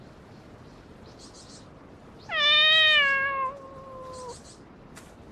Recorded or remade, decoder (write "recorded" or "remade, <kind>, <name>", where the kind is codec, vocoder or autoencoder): recorded